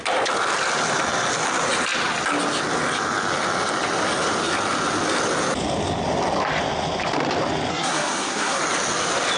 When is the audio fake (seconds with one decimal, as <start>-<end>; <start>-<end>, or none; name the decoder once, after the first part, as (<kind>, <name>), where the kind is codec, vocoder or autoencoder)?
7.7-8.6 (codec, SNAC)